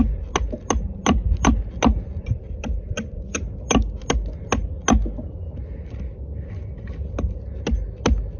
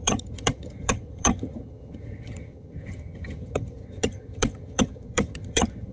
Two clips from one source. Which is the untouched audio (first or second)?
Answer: first